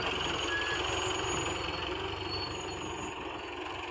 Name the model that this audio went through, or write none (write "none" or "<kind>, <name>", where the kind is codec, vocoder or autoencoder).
none